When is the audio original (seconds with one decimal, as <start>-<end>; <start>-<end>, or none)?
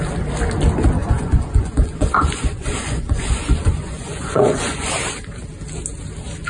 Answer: 0.0-1.0; 4.9-6.5